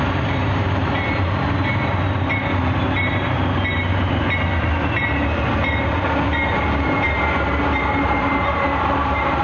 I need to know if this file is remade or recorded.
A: remade